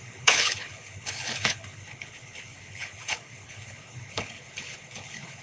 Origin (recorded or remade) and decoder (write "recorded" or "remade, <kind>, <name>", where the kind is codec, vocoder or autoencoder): remade, codec, HILCodec